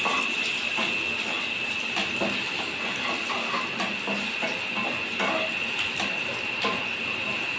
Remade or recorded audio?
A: recorded